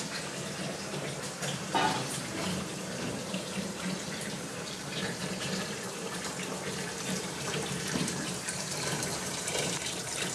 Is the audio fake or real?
fake